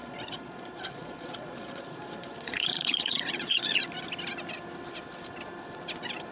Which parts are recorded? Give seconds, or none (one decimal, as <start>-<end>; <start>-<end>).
3.8-6.3